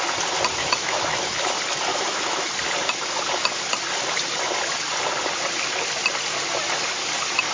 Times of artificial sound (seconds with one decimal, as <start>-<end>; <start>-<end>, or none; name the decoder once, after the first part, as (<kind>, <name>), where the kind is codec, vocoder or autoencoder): 0.6-1.2 (autoencoder, DAC-VAE); 1.9-2.5